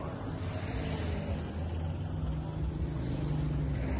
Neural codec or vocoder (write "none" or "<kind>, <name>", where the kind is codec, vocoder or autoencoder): none